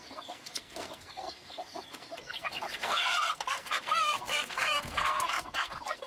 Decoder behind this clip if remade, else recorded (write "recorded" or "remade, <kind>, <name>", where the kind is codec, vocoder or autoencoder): remade, codec, SNAC